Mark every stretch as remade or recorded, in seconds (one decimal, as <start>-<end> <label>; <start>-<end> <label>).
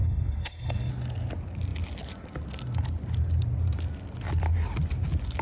0.0-0.9 remade; 0.9-5.4 recorded